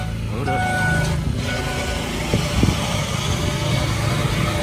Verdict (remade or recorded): recorded